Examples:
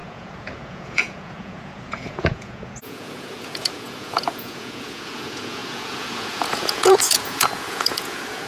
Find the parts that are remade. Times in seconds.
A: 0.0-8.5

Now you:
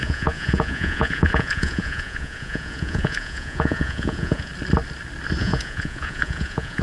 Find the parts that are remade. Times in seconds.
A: 0.0-4.5; 5.4-6.8

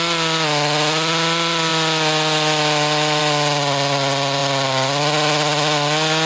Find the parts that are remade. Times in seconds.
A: none